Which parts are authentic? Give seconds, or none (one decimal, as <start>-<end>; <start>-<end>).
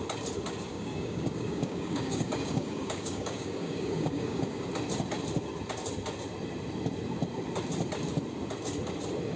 0.0-0.7; 4.7-9.4